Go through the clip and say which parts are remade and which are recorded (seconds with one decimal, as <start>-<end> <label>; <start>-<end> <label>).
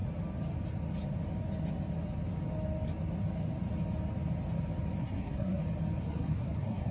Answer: 0.0-5.0 recorded; 5.0-5.6 remade; 5.6-6.0 recorded; 6.0-6.9 remade